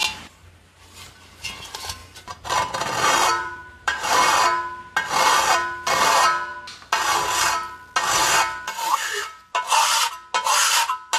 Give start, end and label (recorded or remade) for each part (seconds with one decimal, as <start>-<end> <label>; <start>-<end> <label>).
0.0-0.6 remade; 0.6-2.0 recorded; 2.0-4.3 remade; 4.3-11.2 recorded